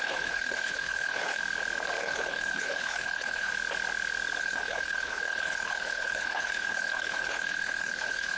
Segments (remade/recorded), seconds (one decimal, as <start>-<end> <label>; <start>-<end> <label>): 0.0-1.4 remade; 1.4-2.0 recorded; 2.0-3.5 remade; 3.5-4.4 recorded; 4.4-8.4 remade